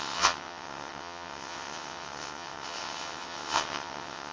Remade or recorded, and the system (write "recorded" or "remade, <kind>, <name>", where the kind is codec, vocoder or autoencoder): remade, vocoder, WaveNeXt